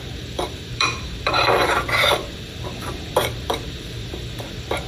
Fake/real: fake